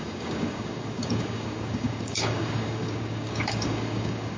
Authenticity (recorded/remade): remade